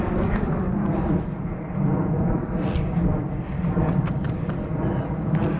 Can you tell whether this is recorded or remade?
recorded